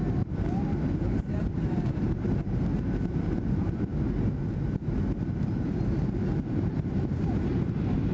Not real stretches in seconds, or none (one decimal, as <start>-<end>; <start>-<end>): 0.0-8.1